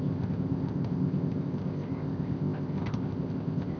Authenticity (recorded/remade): remade